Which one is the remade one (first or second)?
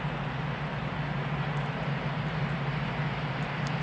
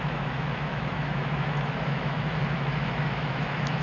second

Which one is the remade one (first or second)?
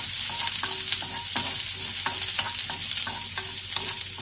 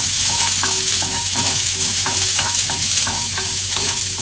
second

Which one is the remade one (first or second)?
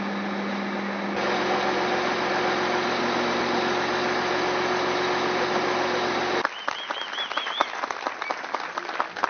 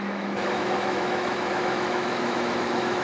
second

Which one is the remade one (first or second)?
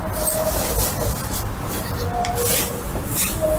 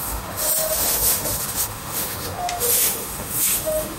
second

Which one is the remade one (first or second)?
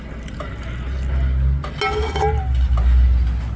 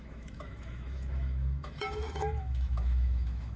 second